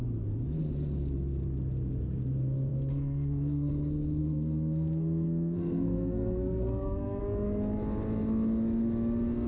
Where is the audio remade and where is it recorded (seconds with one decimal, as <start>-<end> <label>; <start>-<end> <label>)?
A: 0.0-2.7 recorded; 2.7-3.7 remade; 3.7-4.2 recorded; 4.2-7.2 remade; 7.2-9.5 recorded